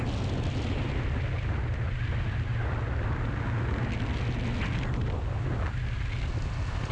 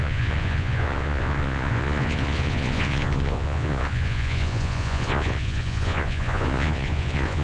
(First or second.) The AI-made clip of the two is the second